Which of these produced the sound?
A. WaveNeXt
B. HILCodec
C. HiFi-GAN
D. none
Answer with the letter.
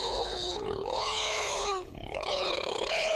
B